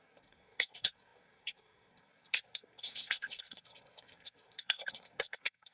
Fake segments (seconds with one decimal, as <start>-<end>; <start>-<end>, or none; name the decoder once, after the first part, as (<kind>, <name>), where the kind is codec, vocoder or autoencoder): 0.0-5.7 (codec, SNAC)

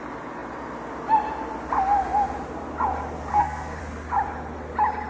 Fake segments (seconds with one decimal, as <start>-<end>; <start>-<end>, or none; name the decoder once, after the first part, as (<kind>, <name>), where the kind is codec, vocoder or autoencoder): 3.3-3.8 (codec, SNAC)

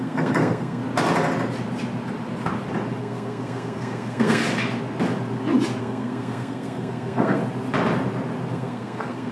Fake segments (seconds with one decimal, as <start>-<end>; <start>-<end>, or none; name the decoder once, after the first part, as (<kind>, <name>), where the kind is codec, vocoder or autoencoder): 0.0-0.8 (codec, SNAC); 3.0-4.4; 5.8-7.4; 8.5-9.3

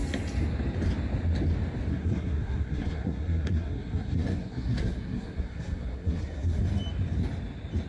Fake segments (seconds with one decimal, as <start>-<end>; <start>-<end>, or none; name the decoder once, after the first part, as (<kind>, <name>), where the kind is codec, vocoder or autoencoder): 1.9-6.6 (codec, SNAC)